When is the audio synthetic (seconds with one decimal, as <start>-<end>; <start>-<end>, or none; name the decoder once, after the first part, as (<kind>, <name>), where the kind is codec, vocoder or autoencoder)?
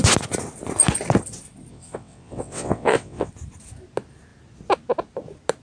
1.7-3.3 (vocoder, WaveNeXt)